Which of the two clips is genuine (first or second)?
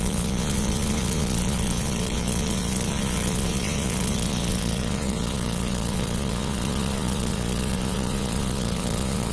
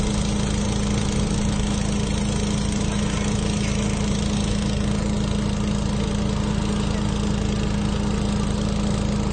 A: second